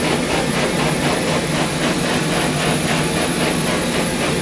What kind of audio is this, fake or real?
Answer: real